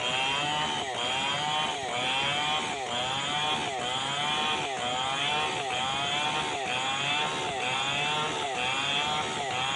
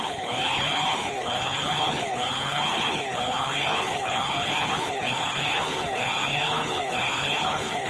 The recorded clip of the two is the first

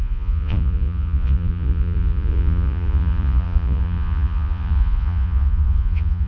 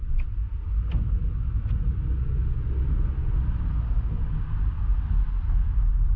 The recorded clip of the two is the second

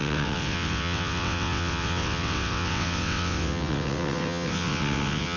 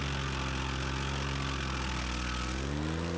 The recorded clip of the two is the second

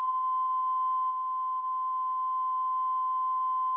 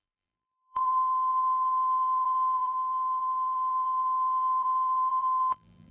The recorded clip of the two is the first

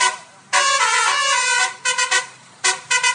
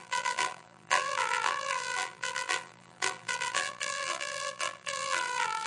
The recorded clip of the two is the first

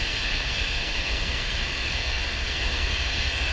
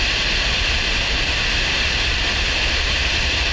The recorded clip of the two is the second